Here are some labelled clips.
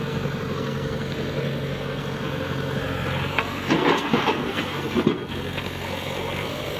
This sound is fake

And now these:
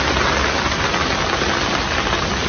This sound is real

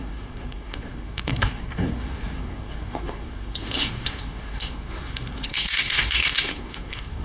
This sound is fake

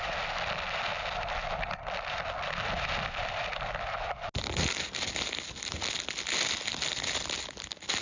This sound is real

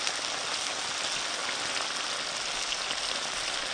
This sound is real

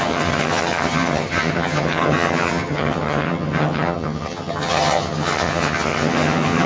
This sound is fake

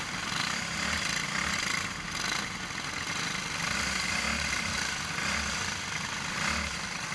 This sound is real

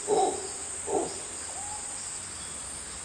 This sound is real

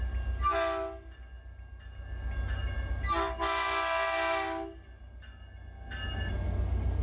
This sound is real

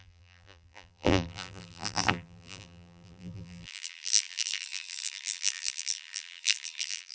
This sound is fake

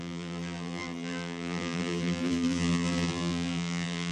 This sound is fake